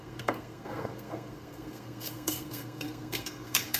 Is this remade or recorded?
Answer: remade